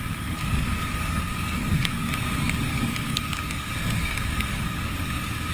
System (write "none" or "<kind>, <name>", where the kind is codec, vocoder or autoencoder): codec, DAC